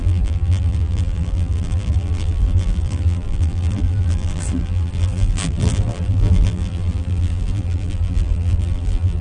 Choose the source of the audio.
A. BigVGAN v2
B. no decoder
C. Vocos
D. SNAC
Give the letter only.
A